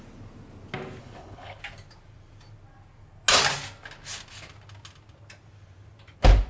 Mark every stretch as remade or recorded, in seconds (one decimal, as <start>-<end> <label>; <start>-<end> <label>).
0.0-1.0 recorded; 1.0-1.6 remade; 1.6-6.5 recorded